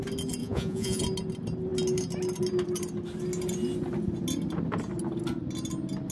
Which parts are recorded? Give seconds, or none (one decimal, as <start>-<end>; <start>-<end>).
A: 0.0-0.4; 1.0-6.1